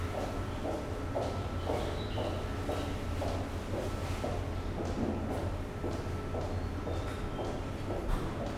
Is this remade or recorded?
recorded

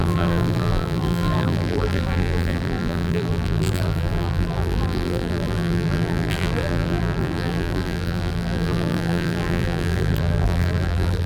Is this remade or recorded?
remade